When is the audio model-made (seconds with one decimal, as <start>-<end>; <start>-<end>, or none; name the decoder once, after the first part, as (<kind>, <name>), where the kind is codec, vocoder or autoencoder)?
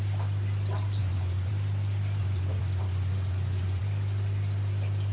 1.0-1.5 (vocoder, Vocos); 2.2-3.8